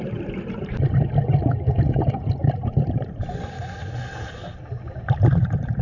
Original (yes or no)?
yes